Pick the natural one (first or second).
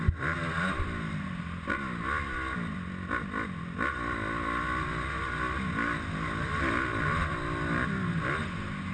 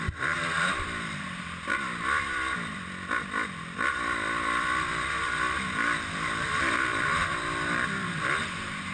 first